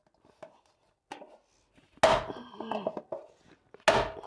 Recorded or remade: recorded